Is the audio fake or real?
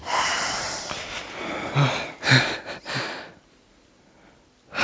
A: real